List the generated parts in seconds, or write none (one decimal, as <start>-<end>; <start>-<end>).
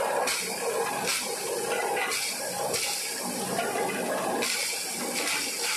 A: none